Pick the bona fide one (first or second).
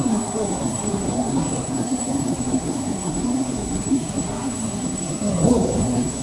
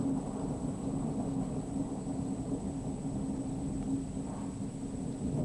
second